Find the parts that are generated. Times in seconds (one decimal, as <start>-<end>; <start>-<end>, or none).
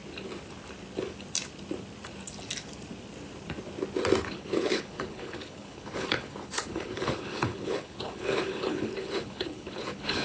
4.2-10.2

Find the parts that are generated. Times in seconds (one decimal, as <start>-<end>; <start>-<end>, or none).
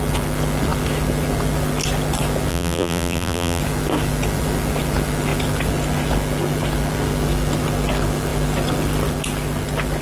2.5-3.6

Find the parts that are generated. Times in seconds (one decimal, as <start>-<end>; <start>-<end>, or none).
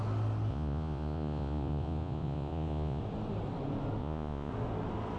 0.5-3.0; 4.0-4.5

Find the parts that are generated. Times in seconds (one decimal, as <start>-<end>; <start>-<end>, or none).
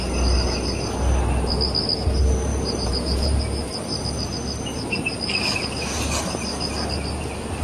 2.5-3.4